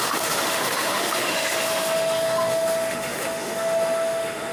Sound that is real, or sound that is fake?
fake